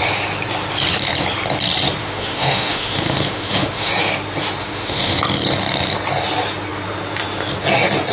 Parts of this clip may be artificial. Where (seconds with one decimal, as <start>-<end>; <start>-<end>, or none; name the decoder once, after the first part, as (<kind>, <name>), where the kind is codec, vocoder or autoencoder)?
2.0-3.9 (autoencoder, DAC-VAE); 4.6-5.2